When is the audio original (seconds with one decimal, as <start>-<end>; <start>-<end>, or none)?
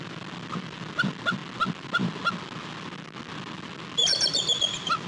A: 0.0-5.1